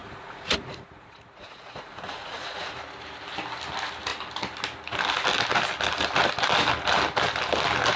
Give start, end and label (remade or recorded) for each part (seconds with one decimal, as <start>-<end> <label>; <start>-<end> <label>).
0.0-2.8 remade; 2.8-8.0 recorded